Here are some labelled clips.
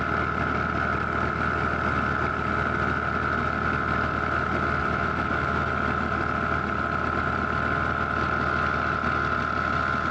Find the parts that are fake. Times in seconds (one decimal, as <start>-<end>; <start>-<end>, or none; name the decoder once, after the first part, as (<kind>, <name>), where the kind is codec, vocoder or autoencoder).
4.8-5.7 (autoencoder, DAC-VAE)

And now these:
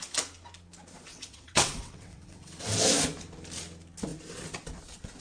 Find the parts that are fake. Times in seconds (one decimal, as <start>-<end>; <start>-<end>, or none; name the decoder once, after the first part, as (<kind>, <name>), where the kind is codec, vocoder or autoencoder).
1.1-2.5 (vocoder, WaveNeXt)

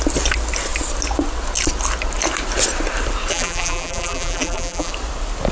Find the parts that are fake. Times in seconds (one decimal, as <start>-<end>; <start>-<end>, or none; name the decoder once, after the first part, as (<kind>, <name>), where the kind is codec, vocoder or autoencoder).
3.3-4.9 (vocoder, BigVGAN v2)